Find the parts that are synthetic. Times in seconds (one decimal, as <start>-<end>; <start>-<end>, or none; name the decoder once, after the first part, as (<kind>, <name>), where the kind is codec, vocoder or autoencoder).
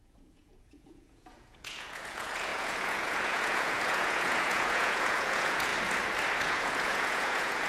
0.0-5.7 (vocoder, Vocos); 6.4-7.7